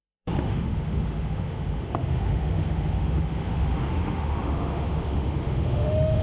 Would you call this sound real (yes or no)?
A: no